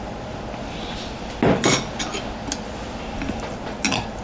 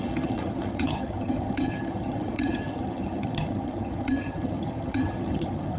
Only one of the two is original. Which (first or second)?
first